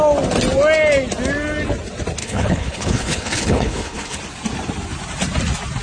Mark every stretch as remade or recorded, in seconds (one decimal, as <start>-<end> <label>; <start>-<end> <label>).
0.0-2.2 recorded; 2.2-4.2 remade; 4.2-5.8 recorded